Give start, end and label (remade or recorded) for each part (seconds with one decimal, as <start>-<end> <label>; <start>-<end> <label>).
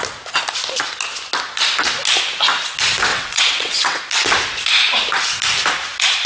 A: 0.0-3.1 recorded; 3.1-4.0 remade; 4.0-6.3 recorded